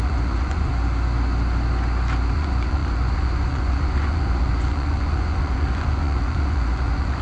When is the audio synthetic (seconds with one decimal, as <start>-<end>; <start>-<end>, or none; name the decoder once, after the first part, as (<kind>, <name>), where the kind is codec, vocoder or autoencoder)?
0.0-0.7 (vocoder, Vocos); 2.3-7.2